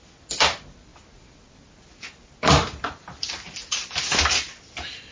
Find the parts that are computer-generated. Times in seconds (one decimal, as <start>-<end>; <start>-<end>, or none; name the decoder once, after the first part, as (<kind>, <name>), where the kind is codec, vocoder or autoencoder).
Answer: none